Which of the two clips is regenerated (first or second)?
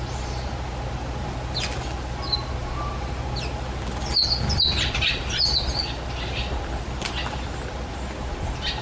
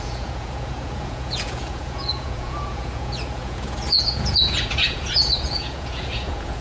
second